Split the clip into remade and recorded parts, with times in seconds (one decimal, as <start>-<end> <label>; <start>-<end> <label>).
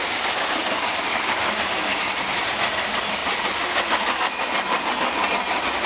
0.0-5.9 recorded